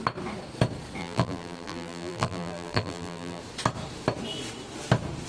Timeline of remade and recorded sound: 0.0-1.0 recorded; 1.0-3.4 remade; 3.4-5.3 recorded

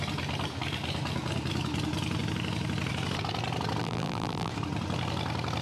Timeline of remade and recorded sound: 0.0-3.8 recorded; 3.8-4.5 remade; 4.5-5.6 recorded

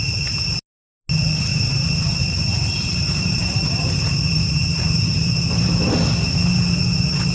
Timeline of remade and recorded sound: 0.0-1.5 recorded; 1.5-5.9 remade; 5.9-7.3 recorded

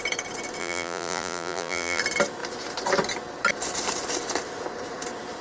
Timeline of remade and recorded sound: 0.0-0.6 recorded; 0.6-2.0 remade; 2.0-5.4 recorded

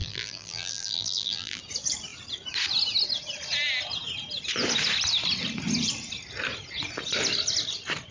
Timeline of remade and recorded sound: 0.0-1.6 remade; 1.6-8.1 recorded